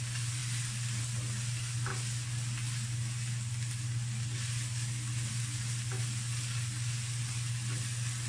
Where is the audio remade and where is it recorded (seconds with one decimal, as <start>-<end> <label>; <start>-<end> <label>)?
0.0-8.3 recorded